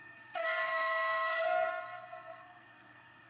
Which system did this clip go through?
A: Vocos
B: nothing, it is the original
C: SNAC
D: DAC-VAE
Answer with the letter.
C